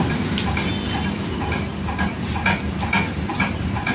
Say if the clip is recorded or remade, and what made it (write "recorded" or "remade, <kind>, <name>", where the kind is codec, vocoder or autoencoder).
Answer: recorded